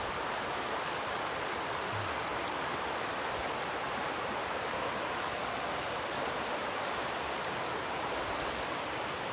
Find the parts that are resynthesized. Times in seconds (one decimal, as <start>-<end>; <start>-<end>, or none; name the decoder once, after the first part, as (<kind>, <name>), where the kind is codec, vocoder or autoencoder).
2.3-5.2 (vocoder, BigVGAN v2)